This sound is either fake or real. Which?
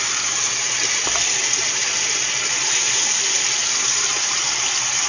real